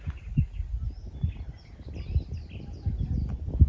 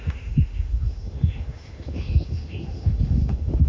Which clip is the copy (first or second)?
second